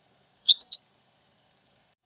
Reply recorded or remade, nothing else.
remade